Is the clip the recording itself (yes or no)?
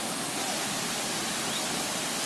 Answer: yes